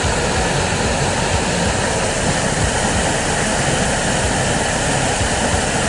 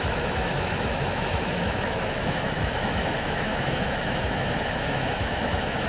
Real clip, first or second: first